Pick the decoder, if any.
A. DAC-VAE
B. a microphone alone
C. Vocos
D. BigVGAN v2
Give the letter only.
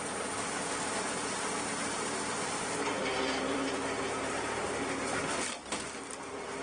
D